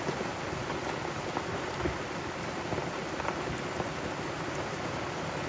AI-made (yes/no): no